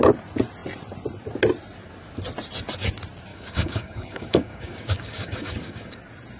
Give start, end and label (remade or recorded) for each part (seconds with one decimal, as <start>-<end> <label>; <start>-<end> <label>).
0.0-3.3 recorded; 3.3-6.0 remade; 6.0-6.4 recorded